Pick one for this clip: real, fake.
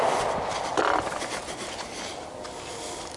real